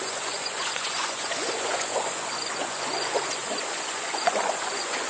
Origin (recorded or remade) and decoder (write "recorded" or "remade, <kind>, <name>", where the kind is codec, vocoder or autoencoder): remade, vocoder, Vocos